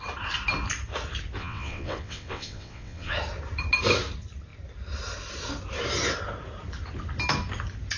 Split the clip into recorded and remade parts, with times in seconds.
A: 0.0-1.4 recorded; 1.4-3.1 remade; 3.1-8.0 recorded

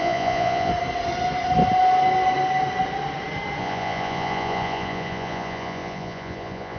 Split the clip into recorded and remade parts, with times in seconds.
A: 0.0-0.7 remade; 0.7-3.6 recorded; 3.6-6.8 remade

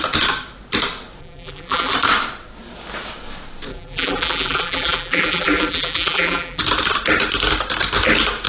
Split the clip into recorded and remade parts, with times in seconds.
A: 0.0-1.2 recorded; 1.2-1.9 remade; 1.9-3.7 recorded; 3.7-6.6 remade; 6.6-8.5 recorded

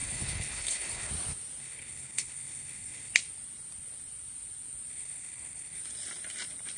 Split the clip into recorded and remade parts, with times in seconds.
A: 0.0-1.1 remade; 1.1-1.6 recorded; 1.6-3.1 remade; 3.1-4.9 recorded; 4.9-5.8 remade; 5.8-6.8 recorded

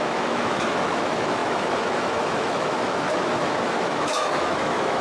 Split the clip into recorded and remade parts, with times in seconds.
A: 0.0-5.0 remade

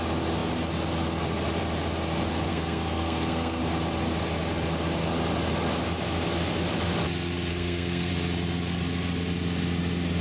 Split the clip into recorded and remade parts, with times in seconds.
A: 0.0-2.5 recorded; 2.5-3.6 remade; 3.6-7.5 recorded; 7.5-8.1 remade; 8.1-10.2 recorded